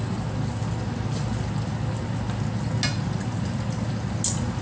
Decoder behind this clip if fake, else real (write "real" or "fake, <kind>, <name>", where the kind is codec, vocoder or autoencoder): real